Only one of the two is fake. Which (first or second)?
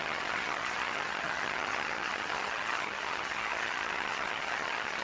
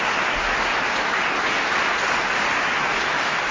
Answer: first